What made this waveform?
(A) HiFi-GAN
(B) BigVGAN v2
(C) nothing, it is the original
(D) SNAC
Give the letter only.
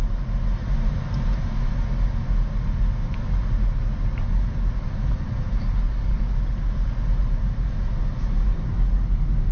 C